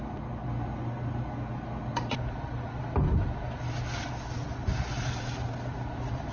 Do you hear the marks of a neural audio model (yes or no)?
no